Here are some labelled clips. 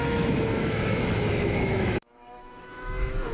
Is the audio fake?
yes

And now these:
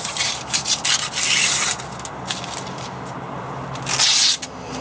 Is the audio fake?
no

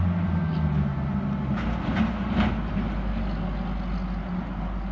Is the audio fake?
no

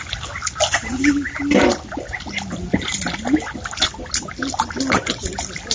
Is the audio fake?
no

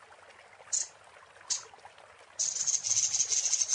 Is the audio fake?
no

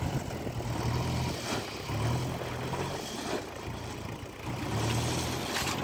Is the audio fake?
no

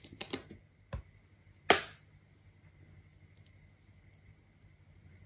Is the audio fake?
no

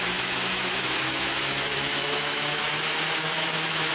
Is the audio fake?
yes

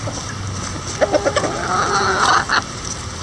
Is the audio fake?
no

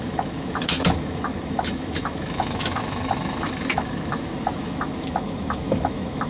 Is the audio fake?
yes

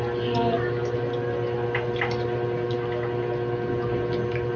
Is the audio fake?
no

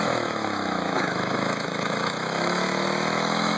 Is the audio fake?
yes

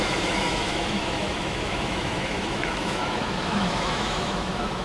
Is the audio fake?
yes